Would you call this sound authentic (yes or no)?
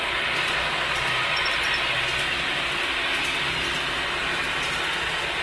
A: yes